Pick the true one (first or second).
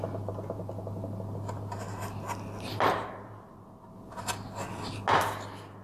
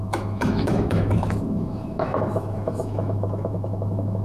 first